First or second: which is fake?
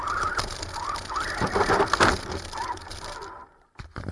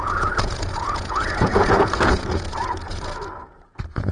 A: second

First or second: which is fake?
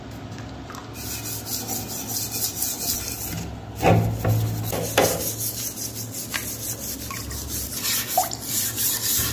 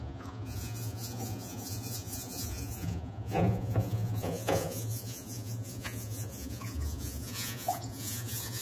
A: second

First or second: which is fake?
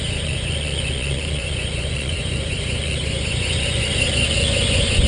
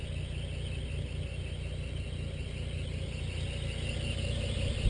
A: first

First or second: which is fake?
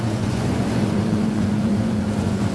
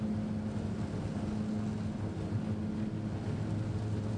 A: first